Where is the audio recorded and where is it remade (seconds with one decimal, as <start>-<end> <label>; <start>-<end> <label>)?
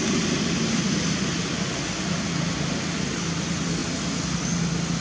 0.0-5.0 recorded